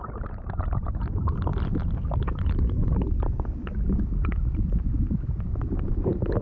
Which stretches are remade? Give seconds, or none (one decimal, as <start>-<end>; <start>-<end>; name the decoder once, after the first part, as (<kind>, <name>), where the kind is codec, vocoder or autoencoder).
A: 0.0-1.5 (vocoder, BigVGAN v2); 5.3-6.4